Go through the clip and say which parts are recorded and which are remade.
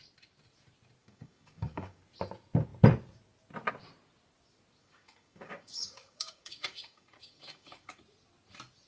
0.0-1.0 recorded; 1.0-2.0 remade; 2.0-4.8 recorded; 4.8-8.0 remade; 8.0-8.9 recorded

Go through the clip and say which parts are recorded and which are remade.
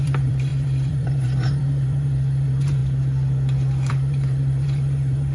0.0-2.8 remade; 2.8-3.9 recorded; 3.9-5.3 remade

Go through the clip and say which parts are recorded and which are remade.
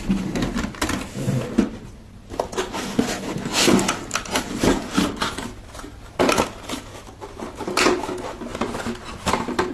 0.0-4.3 recorded; 4.3-5.8 remade; 5.8-8.5 recorded; 8.5-9.7 remade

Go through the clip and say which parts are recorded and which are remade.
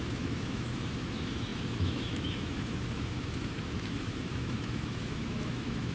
0.0-5.9 remade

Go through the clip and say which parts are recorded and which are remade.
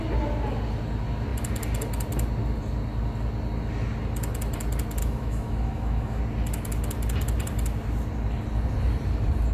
0.0-5.0 recorded; 5.0-6.2 remade; 6.2-9.5 recorded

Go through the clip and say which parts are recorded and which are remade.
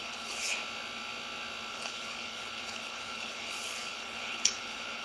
0.0-0.5 remade; 0.5-1.7 recorded; 1.7-5.0 remade